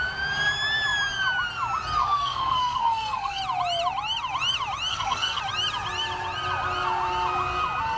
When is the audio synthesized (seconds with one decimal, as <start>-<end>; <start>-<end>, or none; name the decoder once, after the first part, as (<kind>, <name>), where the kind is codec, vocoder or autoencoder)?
2.0-3.4 (codec, SNAC); 4.9-5.4